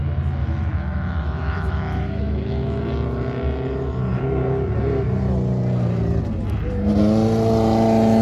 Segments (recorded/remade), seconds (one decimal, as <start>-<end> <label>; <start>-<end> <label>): 0.0-0.4 recorded; 0.4-2.8 remade; 2.8-8.2 recorded